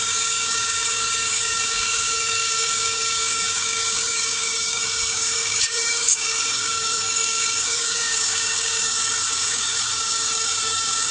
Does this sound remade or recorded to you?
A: remade